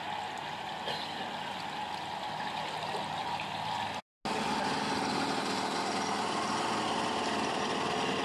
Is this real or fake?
real